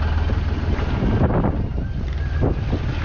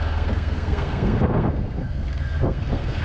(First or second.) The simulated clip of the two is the second